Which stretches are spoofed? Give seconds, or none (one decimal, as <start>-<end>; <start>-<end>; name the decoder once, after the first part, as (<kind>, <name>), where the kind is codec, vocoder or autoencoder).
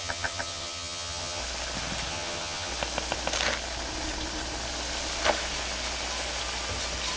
0.0-1.4 (vocoder, HiFi-GAN); 2.1-2.7